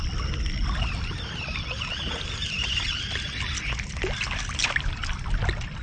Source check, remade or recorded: recorded